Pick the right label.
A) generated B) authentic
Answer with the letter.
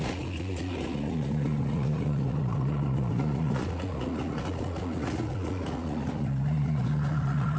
A